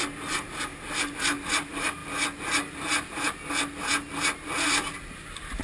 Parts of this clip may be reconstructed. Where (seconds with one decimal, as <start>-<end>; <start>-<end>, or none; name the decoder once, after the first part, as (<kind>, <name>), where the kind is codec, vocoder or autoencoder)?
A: none